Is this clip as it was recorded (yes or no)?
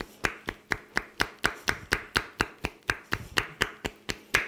yes